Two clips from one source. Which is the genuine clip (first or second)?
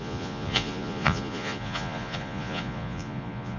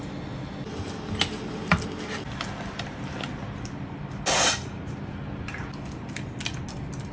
second